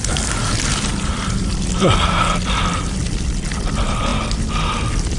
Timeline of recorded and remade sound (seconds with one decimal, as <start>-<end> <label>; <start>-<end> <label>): 0.0-5.2 recorded